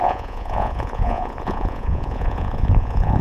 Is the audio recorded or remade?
remade